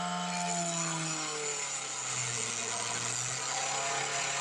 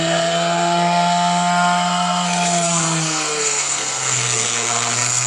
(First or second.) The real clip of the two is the first